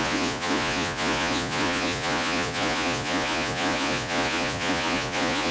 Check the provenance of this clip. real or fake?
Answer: fake